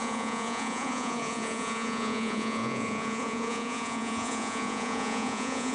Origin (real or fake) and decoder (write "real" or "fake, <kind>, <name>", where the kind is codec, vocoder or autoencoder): fake, vocoder, Vocos